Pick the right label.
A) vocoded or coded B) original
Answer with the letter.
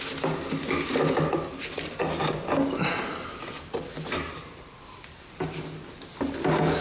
B